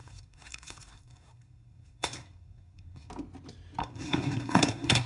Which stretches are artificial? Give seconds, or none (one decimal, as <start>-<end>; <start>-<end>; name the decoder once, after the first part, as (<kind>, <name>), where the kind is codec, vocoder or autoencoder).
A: 0.0-3.1 (codec, SNAC); 3.8-5.1